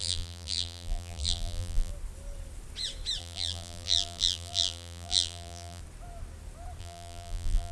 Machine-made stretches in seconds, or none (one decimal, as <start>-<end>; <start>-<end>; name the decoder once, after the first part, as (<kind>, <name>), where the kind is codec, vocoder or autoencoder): 0.0-1.9 (vocoder, BigVGAN v2); 3.2-5.8; 6.8-7.7